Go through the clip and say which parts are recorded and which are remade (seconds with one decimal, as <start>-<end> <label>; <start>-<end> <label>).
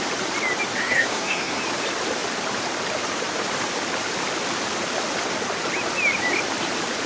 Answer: 0.0-0.8 recorded; 0.8-1.6 remade; 1.6-7.1 recorded